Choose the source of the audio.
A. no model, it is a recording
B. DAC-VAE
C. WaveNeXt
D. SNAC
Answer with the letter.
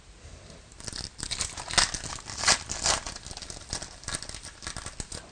A